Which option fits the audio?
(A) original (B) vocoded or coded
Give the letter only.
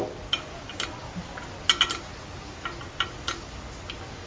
A